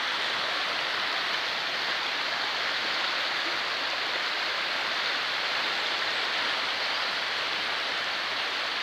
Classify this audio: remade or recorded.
recorded